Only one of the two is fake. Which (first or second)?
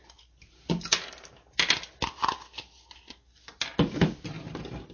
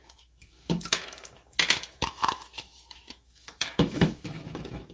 second